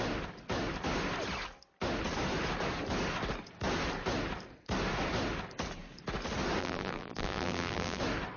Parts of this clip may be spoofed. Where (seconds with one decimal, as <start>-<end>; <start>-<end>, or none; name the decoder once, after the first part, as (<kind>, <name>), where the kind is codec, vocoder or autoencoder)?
6.6-8.0 (vocoder, BigVGAN v2)